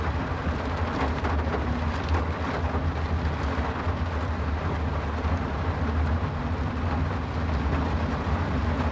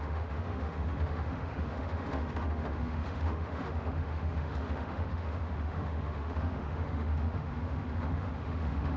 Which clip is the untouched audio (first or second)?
first